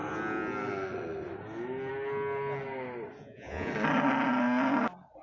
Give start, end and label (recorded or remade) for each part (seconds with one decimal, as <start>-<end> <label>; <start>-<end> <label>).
0.0-3.2 recorded; 3.2-3.7 remade; 3.7-5.2 recorded